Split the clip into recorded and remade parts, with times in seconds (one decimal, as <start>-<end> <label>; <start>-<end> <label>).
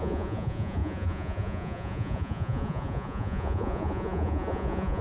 0.0-5.0 remade